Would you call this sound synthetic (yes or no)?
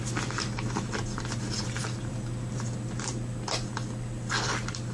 no